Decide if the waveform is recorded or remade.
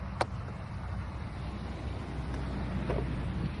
recorded